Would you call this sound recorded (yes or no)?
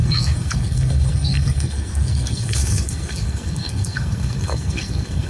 no